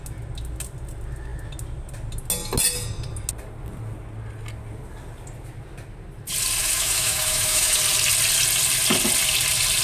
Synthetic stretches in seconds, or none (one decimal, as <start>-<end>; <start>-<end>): 6.6-7.8